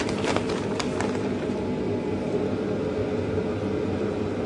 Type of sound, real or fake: real